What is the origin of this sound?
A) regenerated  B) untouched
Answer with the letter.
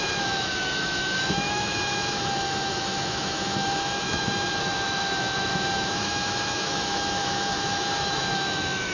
A